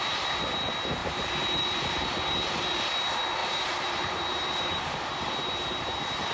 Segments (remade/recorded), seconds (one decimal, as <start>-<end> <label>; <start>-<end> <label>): 0.0-3.4 recorded; 3.4-6.3 remade